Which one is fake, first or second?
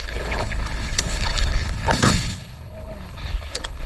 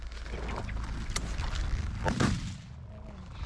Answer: first